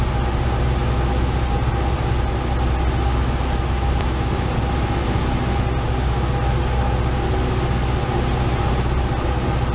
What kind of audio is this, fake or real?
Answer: real